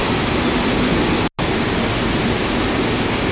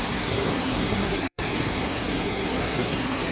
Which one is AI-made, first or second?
second